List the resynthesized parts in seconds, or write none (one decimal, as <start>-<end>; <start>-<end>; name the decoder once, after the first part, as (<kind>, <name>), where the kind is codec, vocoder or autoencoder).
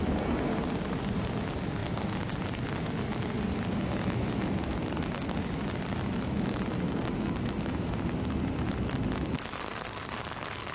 none